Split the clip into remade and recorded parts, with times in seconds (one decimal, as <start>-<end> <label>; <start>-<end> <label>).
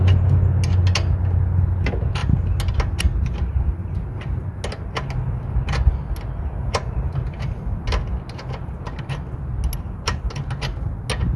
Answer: 0.0-11.4 recorded